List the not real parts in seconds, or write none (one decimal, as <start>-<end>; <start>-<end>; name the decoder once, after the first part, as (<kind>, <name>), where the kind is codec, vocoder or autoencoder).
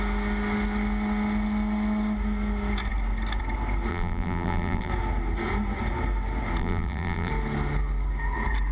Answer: 3.9-4.9 (vocoder, BigVGAN v2); 6.6-7.3